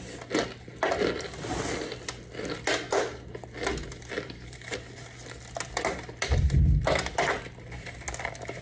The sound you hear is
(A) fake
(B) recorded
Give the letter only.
B